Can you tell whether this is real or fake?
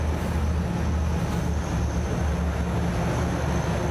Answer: real